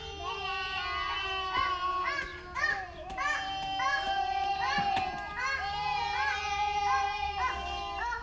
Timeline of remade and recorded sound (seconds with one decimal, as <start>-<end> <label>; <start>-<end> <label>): 0.0-2.3 recorded; 2.3-4.5 remade; 4.5-8.2 recorded